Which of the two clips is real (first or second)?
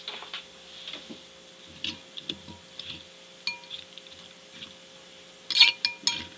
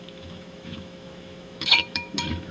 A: first